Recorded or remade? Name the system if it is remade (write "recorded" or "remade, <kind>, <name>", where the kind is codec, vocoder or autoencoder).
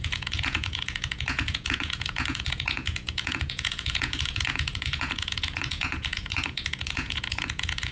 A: remade, vocoder, Vocos